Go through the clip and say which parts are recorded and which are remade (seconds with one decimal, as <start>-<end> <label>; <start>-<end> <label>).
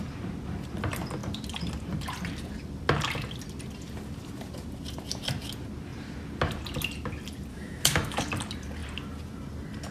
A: 0.0-7.5 recorded; 7.5-8.2 remade; 8.2-9.9 recorded